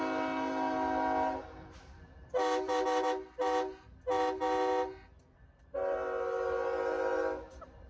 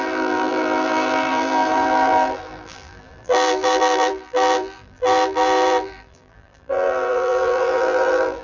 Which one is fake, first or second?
second